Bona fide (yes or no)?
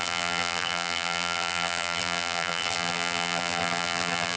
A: no